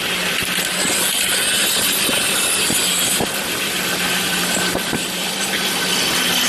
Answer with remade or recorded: recorded